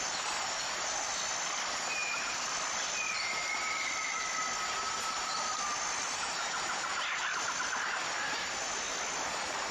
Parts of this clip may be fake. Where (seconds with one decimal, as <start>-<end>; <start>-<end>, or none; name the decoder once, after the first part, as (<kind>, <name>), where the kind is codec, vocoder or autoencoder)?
2.0-4.2 (vocoder, BigVGAN v2)